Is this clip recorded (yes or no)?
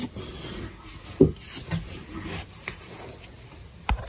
yes